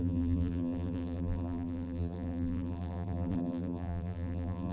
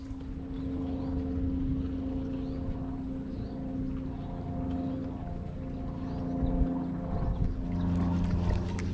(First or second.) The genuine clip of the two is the second